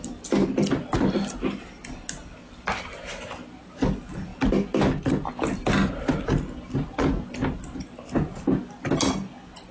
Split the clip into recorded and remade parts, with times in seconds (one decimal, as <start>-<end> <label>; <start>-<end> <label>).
0.0-9.7 recorded